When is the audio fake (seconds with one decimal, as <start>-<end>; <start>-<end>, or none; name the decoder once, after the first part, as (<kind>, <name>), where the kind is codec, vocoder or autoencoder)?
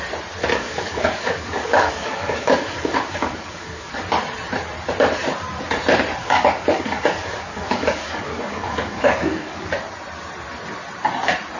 0.5-3.9 (codec, DAC); 6.2-9.7